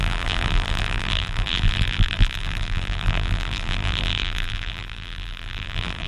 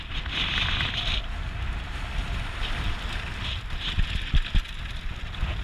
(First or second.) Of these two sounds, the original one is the second